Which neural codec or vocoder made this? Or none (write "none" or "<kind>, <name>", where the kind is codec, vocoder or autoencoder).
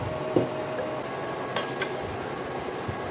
none